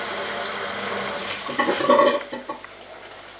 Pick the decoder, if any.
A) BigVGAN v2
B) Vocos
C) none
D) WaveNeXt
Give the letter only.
C